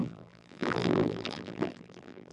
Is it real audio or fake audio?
fake